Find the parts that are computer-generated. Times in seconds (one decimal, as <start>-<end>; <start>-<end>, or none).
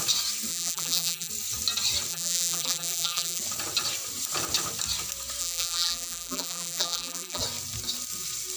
0.5-1.3; 2.1-3.4; 5.4-7.4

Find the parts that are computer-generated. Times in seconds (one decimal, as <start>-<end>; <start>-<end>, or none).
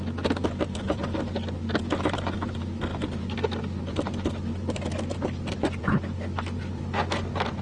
none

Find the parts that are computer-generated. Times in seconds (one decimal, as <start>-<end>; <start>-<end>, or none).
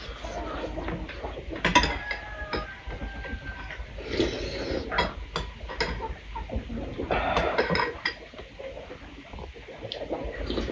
none